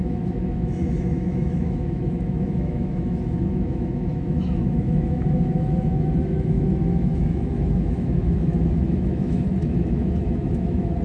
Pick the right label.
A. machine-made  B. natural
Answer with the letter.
A